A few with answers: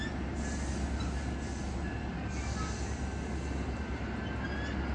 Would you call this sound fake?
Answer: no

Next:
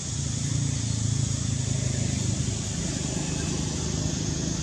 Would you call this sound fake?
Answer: no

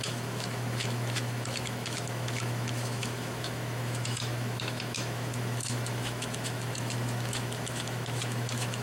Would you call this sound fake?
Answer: yes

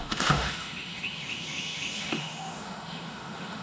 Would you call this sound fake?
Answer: yes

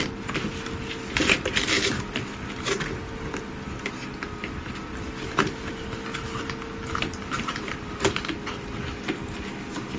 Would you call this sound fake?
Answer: no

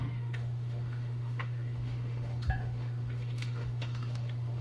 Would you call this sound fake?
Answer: yes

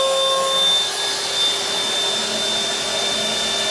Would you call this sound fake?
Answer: no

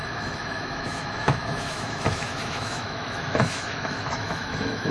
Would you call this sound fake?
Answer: yes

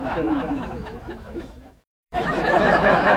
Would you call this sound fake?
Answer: yes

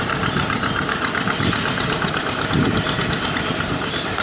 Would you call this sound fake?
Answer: no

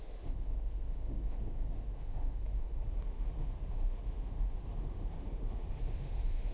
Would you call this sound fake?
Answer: yes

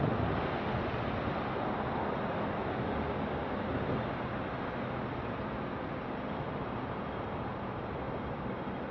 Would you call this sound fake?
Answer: no